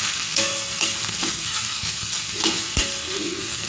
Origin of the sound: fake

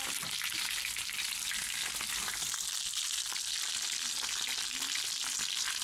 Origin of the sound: real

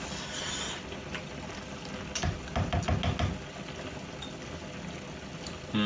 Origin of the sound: real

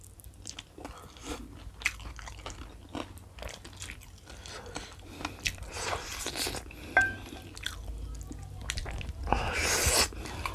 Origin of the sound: real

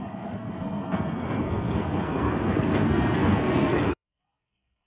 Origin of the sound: fake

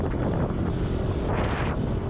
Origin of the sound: real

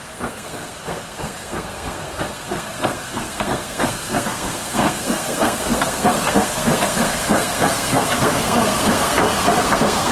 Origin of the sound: fake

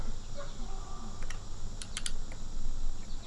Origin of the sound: real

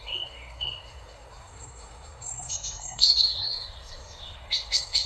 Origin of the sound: fake